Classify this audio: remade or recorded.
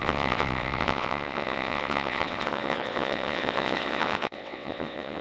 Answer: remade